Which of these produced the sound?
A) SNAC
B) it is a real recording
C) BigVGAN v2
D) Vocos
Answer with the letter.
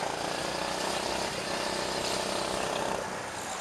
B